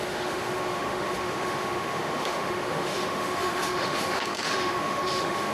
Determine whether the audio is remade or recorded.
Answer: remade